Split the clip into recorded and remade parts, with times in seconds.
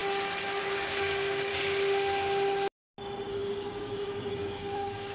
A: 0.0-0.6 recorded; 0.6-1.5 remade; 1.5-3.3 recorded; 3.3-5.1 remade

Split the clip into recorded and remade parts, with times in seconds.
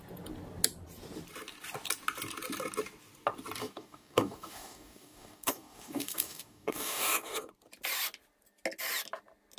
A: 0.0-3.6 recorded; 3.6-7.5 remade; 7.5-9.6 recorded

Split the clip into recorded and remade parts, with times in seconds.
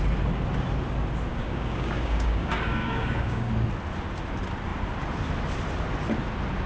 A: 0.0-1.3 recorded; 1.3-3.5 remade; 3.5-6.7 recorded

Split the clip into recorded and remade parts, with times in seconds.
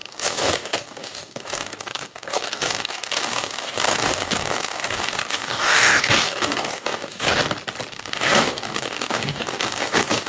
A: 0.0-7.4 remade; 7.4-7.9 recorded; 7.9-10.3 remade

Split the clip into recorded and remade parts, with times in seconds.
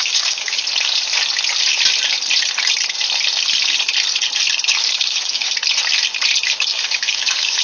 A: 0.0-0.6 remade; 0.6-4.8 recorded; 4.8-5.5 remade; 5.5-6.7 recorded; 6.7-7.6 remade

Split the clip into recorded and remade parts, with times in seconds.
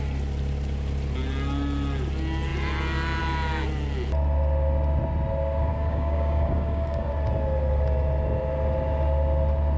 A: 0.0-5.7 recorded; 5.7-7.1 remade; 7.1-9.8 recorded